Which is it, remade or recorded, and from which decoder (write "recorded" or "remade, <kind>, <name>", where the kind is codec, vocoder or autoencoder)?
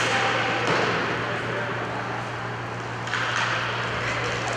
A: recorded